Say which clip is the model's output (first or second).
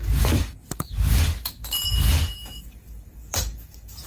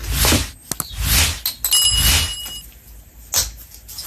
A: first